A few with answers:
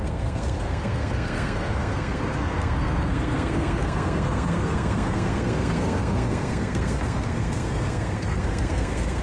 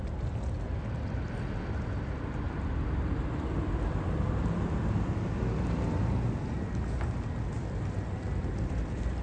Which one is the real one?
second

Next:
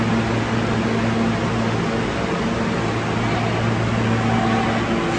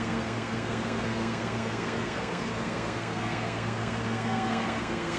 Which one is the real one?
first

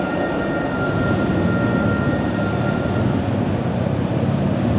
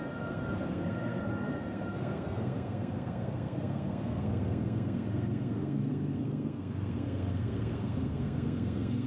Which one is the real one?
first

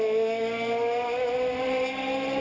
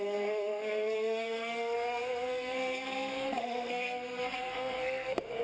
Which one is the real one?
first